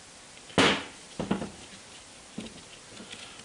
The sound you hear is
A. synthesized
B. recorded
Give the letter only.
B